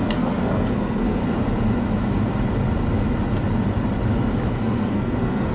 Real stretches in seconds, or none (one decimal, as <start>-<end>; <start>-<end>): 1.2-4.5